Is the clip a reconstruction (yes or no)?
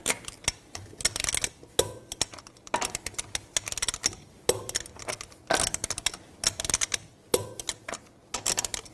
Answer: no